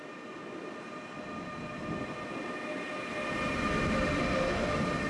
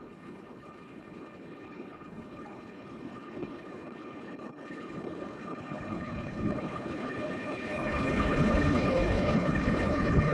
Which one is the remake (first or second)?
second